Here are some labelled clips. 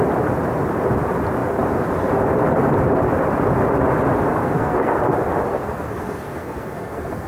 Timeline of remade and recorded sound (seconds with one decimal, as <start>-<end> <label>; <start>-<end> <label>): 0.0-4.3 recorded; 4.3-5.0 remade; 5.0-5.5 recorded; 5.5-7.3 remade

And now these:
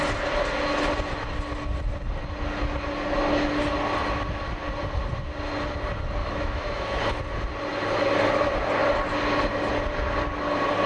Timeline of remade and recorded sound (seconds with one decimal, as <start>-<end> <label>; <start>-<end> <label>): 0.0-6.2 recorded; 6.2-7.0 remade; 7.0-10.9 recorded

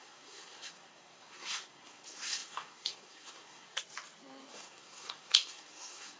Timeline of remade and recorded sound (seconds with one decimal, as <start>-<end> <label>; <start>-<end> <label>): 0.0-3.7 remade; 3.7-4.5 recorded; 4.5-6.2 remade